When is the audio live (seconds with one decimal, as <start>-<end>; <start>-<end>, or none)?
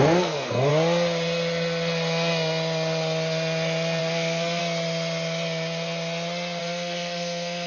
0.7-4.0; 4.6-6.6